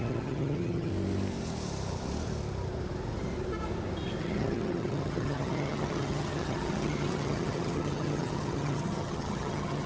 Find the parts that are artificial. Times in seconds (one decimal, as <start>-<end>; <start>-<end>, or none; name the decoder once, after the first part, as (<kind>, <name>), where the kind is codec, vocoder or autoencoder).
0.0-0.9 (vocoder, HiFi-GAN); 4.2-9.9